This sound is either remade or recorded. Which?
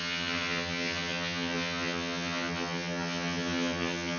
remade